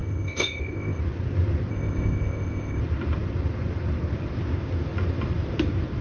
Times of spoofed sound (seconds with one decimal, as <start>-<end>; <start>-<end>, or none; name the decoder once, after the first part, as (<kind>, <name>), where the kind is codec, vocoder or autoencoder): 0.0-1.0 (codec, ZipCodec); 1.7-2.8